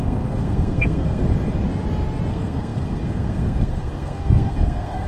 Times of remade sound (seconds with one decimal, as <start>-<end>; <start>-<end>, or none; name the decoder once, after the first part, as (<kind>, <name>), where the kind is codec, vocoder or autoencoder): 0.0-1.2 (codec, SNAC); 2.3-5.1